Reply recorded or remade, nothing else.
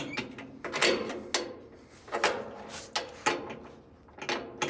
recorded